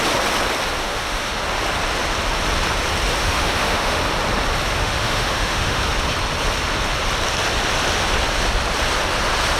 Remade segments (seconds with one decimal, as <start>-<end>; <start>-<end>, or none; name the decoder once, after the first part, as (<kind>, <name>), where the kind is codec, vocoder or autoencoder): 0.8-1.4 (autoencoder, DAC-VAE); 3.2-4.0; 4.8-5.8